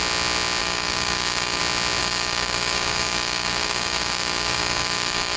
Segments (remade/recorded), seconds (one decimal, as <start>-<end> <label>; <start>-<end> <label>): 0.0-0.6 recorded; 0.6-1.6 remade; 1.6-2.0 recorded; 2.0-5.4 remade